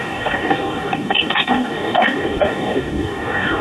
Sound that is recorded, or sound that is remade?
remade